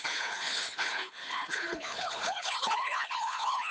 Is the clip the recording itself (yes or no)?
no